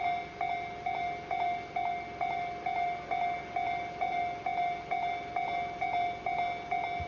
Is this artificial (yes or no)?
no